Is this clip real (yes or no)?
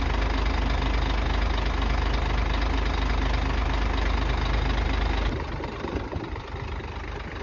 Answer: yes